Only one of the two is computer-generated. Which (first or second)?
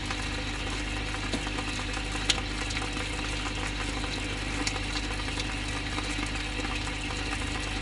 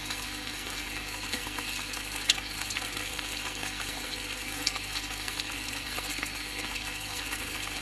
second